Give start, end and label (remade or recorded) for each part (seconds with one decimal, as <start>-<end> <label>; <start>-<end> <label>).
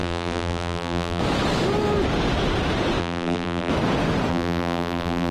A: 0.0-1.2 remade; 1.2-3.0 recorded; 3.0-3.7 remade; 3.7-4.3 recorded; 4.3-5.3 remade